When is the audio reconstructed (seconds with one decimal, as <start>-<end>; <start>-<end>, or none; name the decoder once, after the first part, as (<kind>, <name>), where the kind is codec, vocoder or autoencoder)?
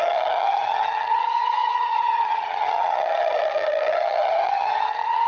0.0-5.3 (vocoder, HiFi-GAN)